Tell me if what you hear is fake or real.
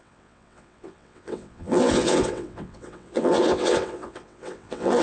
fake